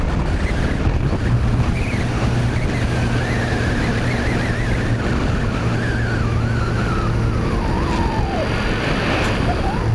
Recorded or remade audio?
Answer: recorded